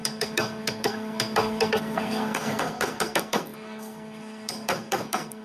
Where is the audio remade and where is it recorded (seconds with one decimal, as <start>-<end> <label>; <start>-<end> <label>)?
0.0-5.4 remade